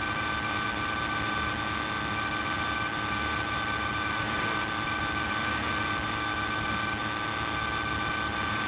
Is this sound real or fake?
real